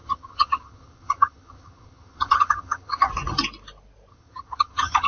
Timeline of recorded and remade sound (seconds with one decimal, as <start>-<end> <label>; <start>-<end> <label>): 0.0-3.1 remade; 3.1-4.1 recorded; 4.1-5.1 remade